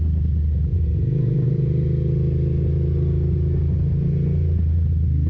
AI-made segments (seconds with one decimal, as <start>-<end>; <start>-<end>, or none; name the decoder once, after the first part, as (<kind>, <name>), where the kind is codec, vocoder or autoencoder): 0.7-1.7 (vocoder, Vocos)